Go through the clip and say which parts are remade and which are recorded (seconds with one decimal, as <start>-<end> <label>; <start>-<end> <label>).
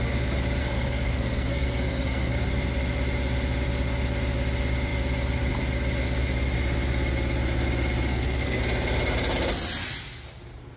0.0-0.6 recorded; 0.6-2.5 remade; 2.5-8.1 recorded; 8.1-8.6 remade; 8.6-10.8 recorded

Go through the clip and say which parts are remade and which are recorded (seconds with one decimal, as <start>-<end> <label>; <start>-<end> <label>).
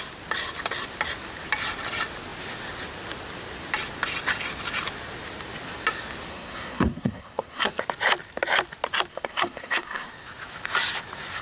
0.0-6.3 recorded; 6.3-7.8 remade; 7.8-9.1 recorded; 9.1-10.1 remade; 10.1-11.4 recorded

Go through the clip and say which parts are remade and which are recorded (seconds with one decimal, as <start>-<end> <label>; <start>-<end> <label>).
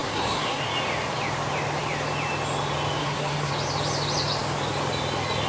0.0-0.6 remade; 0.6-3.0 recorded; 3.0-3.5 remade; 3.5-5.5 recorded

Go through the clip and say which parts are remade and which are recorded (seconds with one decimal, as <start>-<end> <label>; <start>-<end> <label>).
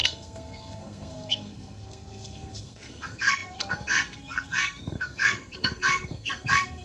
0.0-6.8 remade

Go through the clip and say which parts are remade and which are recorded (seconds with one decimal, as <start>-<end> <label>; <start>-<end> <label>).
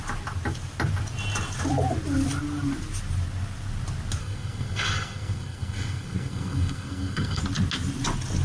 0.0-4.2 recorded; 4.2-7.4 remade; 7.4-8.4 recorded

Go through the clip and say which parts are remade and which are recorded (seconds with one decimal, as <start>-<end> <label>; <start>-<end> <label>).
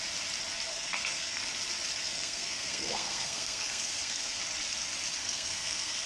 0.0-0.7 recorded; 0.7-1.4 remade; 1.4-2.0 recorded; 2.0-4.4 remade; 4.4-5.2 recorded; 5.2-6.1 remade